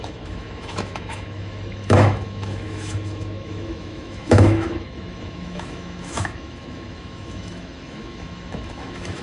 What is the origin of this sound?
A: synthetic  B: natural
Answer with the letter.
A